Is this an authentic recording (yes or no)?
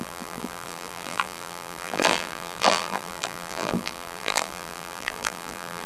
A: no